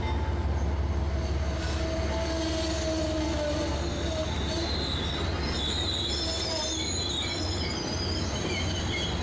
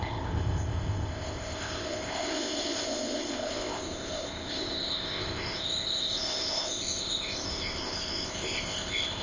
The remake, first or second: second